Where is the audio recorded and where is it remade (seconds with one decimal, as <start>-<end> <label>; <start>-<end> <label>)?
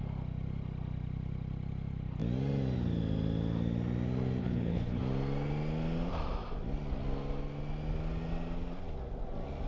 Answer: 0.0-4.4 recorded; 4.4-5.0 remade; 5.0-9.7 recorded